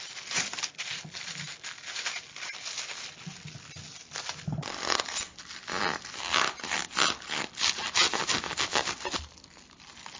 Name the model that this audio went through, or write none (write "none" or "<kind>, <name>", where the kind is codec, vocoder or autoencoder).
none